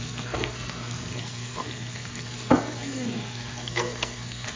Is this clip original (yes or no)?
no